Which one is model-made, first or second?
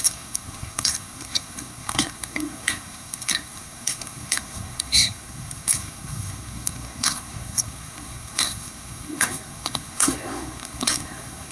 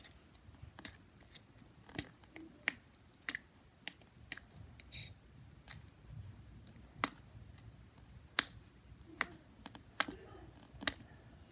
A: first